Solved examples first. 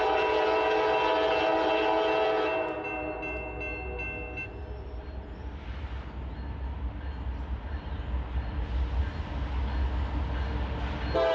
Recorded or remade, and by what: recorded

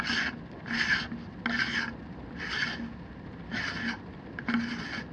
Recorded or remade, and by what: recorded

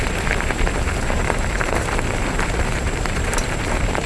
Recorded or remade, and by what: remade, vocoder, BigVGAN v2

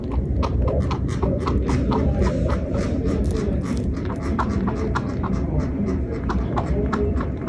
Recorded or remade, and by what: remade, vocoder, BigVGAN v2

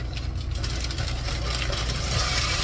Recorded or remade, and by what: recorded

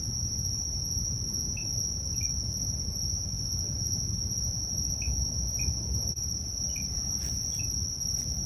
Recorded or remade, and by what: recorded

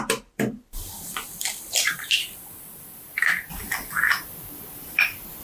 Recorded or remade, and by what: remade, vocoder, BigVGAN v2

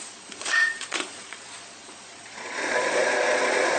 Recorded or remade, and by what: remade, vocoder, Vocos